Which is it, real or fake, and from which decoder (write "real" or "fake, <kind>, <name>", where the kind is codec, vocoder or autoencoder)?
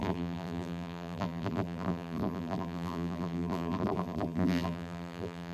fake, vocoder, BigVGAN v2